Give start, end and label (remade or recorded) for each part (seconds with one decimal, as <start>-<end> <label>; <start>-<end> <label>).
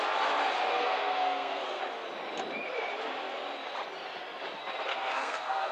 0.0-0.7 recorded; 0.7-1.8 remade; 1.8-4.9 recorded; 4.9-5.7 remade